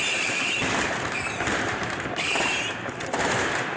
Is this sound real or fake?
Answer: fake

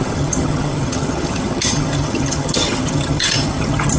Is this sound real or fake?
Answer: fake